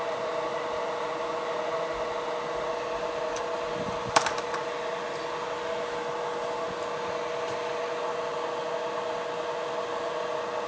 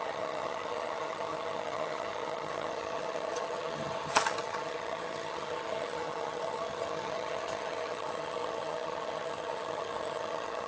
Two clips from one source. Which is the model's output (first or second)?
second